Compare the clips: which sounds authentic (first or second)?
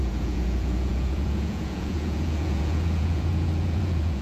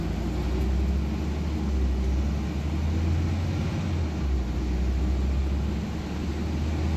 second